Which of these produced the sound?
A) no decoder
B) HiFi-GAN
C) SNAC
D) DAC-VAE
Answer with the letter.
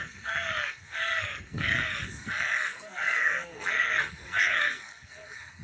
C